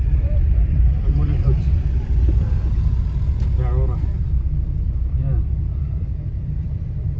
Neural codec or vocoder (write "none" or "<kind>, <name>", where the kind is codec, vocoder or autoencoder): vocoder, BigVGAN v2